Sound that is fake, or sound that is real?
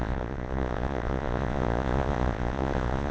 fake